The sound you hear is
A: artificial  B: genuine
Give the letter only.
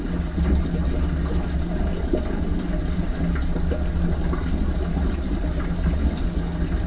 B